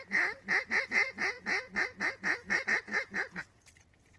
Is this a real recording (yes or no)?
no